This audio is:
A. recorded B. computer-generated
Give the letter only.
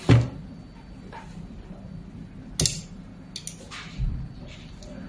A